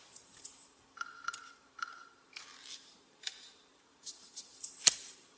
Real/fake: fake